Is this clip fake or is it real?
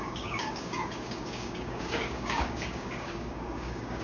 fake